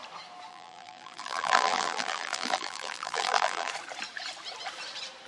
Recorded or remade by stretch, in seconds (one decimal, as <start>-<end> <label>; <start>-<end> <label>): 0.0-0.5 recorded; 0.5-3.7 remade; 3.7-5.3 recorded